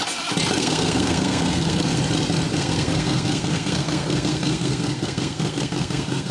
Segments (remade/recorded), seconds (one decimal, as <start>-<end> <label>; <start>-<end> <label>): 0.0-0.6 recorded; 0.6-2.0 remade; 2.0-2.5 recorded; 2.5-6.3 remade